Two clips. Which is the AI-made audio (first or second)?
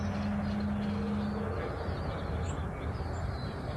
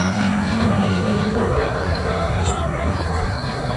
second